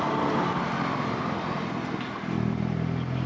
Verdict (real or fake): real